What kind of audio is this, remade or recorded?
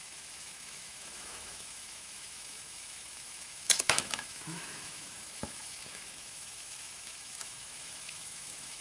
remade